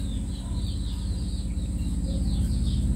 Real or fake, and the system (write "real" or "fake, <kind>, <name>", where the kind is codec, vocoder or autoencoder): real